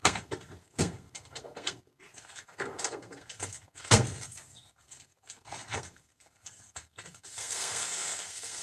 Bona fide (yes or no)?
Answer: no